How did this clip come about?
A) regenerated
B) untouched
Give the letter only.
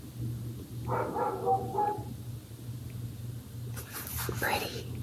B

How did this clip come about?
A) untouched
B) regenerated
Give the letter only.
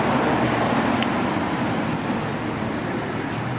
A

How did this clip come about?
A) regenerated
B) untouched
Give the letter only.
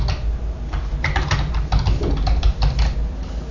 B